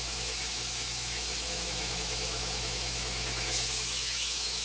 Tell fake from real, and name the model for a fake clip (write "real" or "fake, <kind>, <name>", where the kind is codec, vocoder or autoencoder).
fake, autoencoder, DAC-VAE